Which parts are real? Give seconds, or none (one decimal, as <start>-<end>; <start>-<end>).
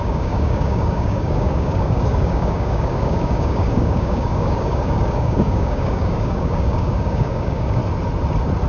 7.8-8.7